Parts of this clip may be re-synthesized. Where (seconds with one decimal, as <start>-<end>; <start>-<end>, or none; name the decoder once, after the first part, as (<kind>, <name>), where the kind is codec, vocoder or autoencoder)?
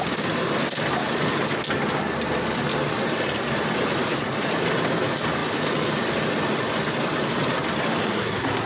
8.0-8.7 (codec, SNAC)